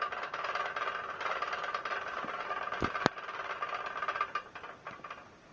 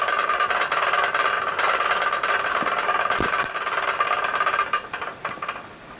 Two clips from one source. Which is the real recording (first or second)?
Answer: first